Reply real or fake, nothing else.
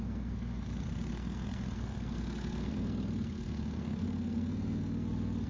fake